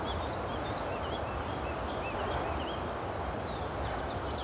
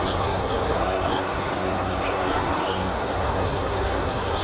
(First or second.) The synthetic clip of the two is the second